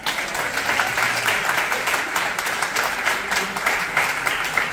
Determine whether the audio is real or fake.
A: fake